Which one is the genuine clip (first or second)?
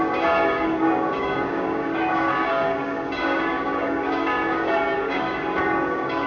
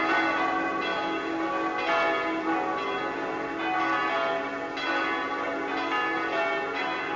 second